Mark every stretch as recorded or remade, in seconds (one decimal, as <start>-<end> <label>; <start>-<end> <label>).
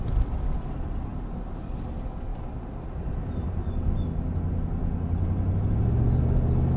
0.0-6.8 recorded